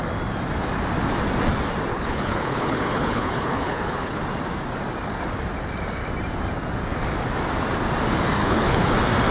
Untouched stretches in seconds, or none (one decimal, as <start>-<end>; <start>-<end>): 0.0-1.9; 4.2-8.4; 8.9-9.3